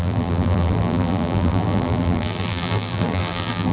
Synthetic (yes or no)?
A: yes